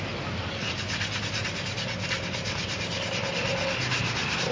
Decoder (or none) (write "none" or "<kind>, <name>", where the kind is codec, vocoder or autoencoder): none